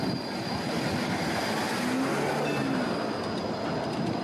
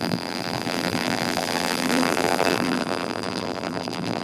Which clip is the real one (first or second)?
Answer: first